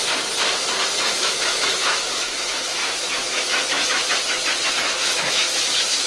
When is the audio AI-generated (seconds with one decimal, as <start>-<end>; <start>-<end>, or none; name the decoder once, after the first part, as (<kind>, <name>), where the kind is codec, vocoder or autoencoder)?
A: 1.2-6.1 (autoencoder, DAC-VAE)